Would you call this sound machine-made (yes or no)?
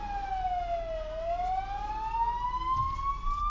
no